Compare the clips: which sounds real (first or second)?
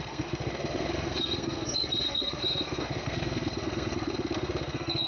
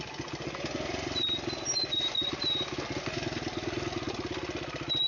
second